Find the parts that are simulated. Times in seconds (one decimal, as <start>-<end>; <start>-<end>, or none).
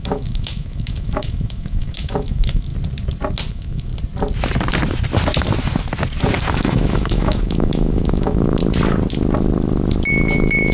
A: 0.0-2.7; 3.5-3.9; 6.5-8.6; 10.1-10.7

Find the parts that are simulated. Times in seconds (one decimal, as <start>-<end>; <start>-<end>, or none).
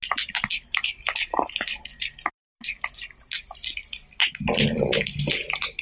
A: none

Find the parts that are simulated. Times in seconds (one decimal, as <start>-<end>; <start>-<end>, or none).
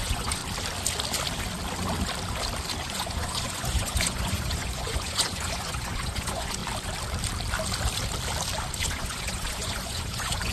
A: 0.0-0.4; 2.8-6.6; 8.8-10.5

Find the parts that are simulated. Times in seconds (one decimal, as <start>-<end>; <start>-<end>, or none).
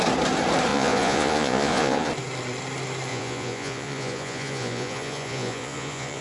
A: 0.7-2.1; 3.1-6.2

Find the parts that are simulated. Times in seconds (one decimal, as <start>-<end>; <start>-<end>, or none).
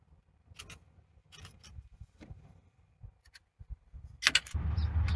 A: none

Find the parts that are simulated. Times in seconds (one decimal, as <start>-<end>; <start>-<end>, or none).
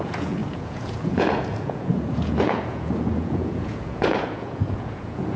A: 0.0-5.4